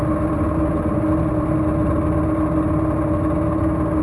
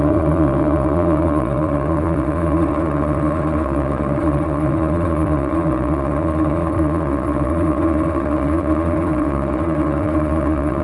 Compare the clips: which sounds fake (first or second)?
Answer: second